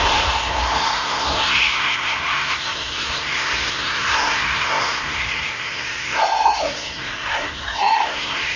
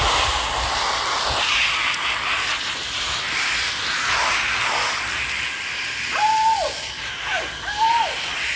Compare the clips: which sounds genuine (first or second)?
second